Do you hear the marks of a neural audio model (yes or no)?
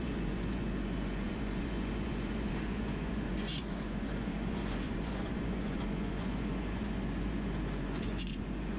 yes